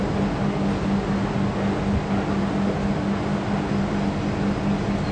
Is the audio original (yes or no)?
yes